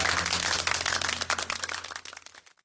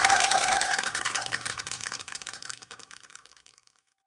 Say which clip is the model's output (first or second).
second